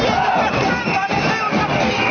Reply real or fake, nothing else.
real